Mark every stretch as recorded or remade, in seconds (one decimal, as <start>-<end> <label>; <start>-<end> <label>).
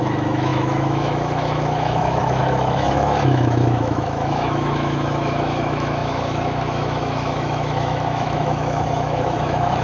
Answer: 0.0-9.8 remade